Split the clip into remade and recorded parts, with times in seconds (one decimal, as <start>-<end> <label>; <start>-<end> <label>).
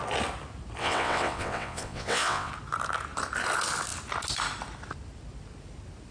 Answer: 0.0-0.8 recorded; 0.8-2.5 remade; 2.5-6.1 recorded